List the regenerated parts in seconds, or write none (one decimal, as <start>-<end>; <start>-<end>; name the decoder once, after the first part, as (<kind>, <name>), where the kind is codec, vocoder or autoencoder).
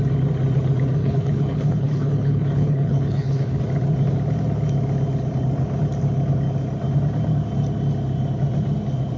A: 1.0-3.6 (codec, HILCodec)